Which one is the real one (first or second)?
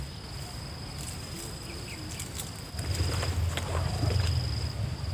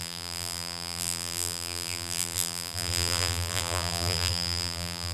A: first